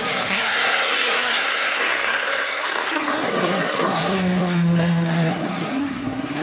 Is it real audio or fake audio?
fake